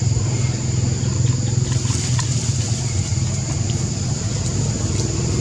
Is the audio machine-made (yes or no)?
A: no